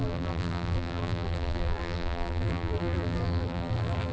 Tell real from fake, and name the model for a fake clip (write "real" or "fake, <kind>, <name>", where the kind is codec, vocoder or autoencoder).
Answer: fake, vocoder, BigVGAN v2